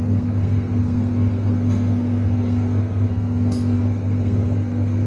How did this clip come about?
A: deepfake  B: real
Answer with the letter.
A